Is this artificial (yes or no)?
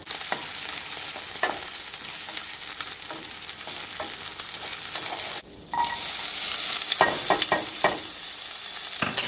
no